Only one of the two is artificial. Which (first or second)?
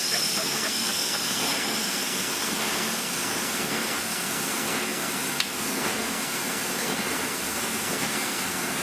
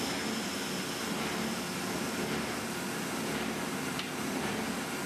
first